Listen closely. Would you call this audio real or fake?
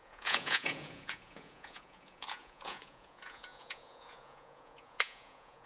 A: fake